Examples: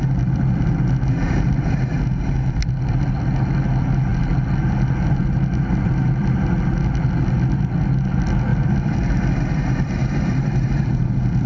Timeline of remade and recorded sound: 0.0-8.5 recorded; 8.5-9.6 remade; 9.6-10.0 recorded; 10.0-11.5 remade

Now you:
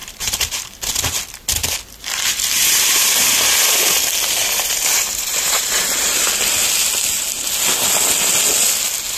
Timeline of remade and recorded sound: 0.0-0.8 remade; 0.8-2.6 recorded; 2.6-4.0 remade; 4.0-4.4 recorded; 4.4-6.2 remade; 6.2-9.2 recorded

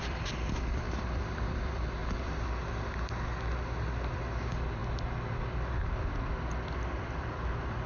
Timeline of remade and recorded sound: 0.0-2.0 remade; 2.0-4.1 recorded; 4.1-4.8 remade; 4.8-6.0 recorded; 6.0-7.9 remade

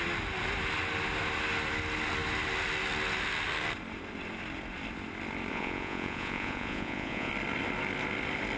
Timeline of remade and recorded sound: 0.0-5.5 recorded; 5.5-7.3 remade; 7.3-8.6 recorded

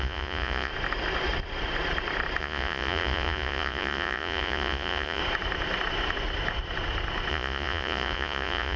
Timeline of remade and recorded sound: 0.0-0.7 remade; 0.7-2.4 recorded; 2.4-5.2 remade; 5.2-7.3 recorded; 7.3-8.8 remade

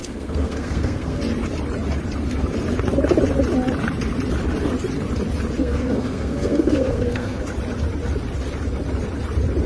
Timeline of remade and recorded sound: 0.0-1.2 remade; 1.2-5.6 recorded; 5.6-7.4 remade; 7.4-9.7 recorded

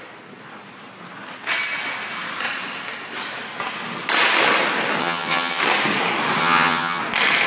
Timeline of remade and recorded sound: 0.0-5.0 recorded; 5.0-5.6 remade; 5.6-6.4 recorded; 6.4-7.0 remade; 7.0-7.5 recorded

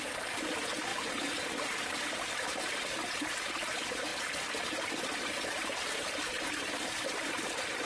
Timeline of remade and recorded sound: 0.0-7.9 recorded